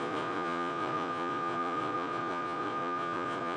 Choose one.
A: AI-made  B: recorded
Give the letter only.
A